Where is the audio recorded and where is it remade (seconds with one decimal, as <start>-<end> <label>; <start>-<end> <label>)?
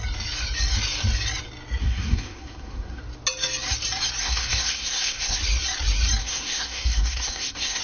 0.0-1.8 recorded; 1.8-3.0 remade; 3.0-4.2 recorded; 4.2-5.4 remade; 5.4-6.2 recorded; 6.2-7.8 remade